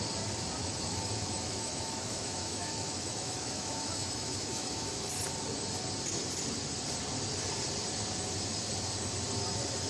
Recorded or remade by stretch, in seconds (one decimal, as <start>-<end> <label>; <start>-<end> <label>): 0.0-0.6 recorded; 0.6-5.1 remade; 5.1-9.9 recorded